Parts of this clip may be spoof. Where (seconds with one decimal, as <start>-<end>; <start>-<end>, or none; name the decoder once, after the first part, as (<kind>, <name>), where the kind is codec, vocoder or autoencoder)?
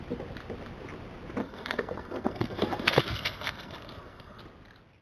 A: 1.4-4.4 (codec, SNAC)